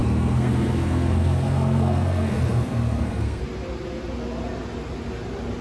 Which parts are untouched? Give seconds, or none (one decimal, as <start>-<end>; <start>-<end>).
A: 3.4-5.6